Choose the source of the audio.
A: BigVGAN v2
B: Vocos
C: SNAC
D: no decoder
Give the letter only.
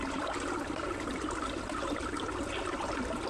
D